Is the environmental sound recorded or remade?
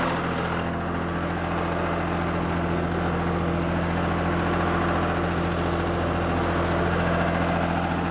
recorded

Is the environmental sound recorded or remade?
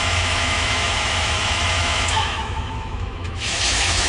remade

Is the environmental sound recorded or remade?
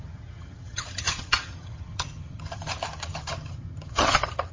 remade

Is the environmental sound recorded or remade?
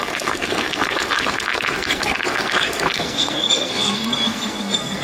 remade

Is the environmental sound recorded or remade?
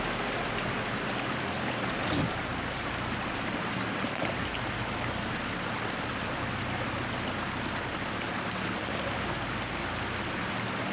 recorded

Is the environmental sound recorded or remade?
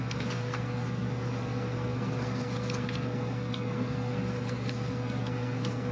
remade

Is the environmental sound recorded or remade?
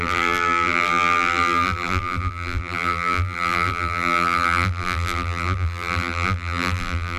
remade